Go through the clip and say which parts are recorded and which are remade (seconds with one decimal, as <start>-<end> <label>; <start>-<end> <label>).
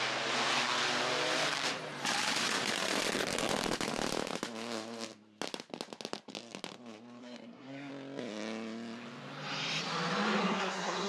0.0-7.2 recorded; 7.2-7.9 remade; 7.9-10.4 recorded; 10.4-11.1 remade